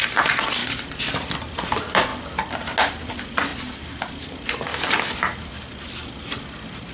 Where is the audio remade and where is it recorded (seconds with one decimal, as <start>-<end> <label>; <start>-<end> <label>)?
0.0-0.6 remade; 0.6-1.6 recorded; 1.6-2.1 remade; 2.1-3.0 recorded; 3.0-4.7 remade; 4.7-6.1 recorded; 6.1-6.9 remade

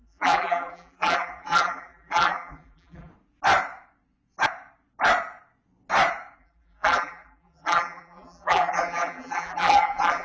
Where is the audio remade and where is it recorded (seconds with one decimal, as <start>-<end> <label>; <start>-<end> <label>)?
0.0-3.1 remade; 3.1-6.4 recorded; 6.4-10.2 remade

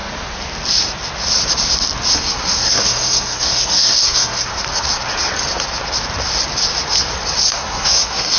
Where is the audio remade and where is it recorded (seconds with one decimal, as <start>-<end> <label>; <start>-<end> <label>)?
0.0-2.1 recorded; 2.1-4.5 remade; 4.5-7.5 recorded; 7.5-8.4 remade